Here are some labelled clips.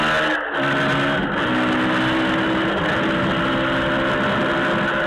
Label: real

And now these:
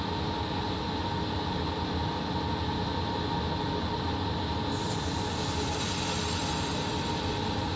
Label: real